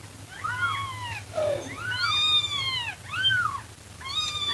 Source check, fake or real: real